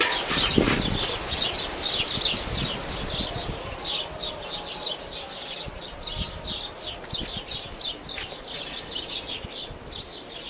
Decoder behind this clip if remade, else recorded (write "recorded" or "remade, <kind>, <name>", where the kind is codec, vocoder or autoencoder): recorded